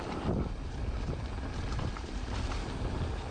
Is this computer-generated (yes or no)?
no